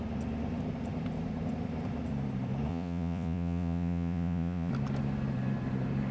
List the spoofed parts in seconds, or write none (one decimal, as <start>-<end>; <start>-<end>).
2.7-4.7

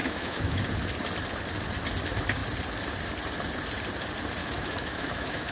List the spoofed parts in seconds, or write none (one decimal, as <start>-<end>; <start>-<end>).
0.0-0.6; 4.4-5.5

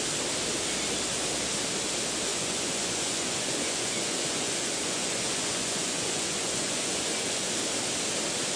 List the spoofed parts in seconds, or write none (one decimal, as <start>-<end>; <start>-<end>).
2.3-7.5

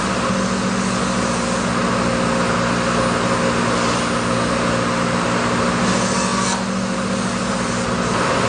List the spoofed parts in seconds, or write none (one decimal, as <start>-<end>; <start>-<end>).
none

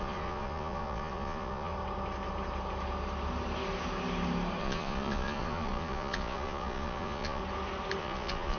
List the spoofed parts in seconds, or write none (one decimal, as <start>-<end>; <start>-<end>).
0.0-1.7; 4.6-7.4; 8.0-8.6